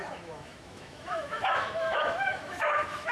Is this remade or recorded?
remade